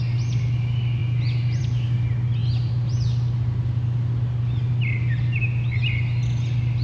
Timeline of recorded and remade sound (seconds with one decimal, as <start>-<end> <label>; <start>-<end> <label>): 0.0-6.8 recorded